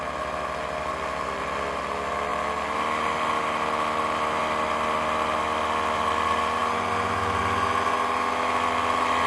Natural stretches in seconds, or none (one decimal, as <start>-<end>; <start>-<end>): 0.0-9.3